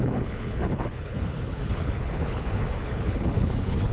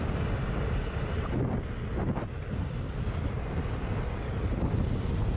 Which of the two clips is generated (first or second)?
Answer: first